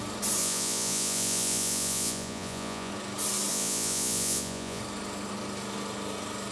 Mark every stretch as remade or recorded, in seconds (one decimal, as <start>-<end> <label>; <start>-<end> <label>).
0.0-0.4 recorded; 0.4-2.9 remade; 2.9-3.5 recorded; 3.5-4.8 remade; 4.8-6.5 recorded